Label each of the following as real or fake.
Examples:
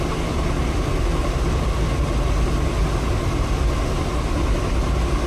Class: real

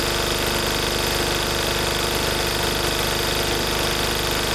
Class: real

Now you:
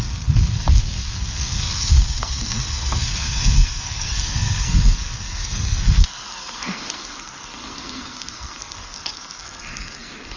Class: fake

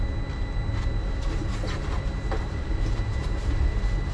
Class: real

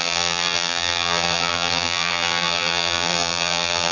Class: fake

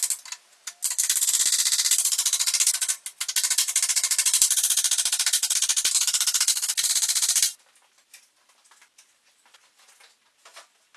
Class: real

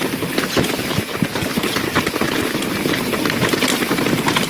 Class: real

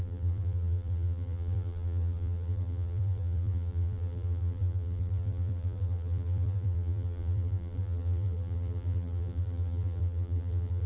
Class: fake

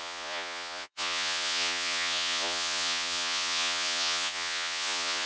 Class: fake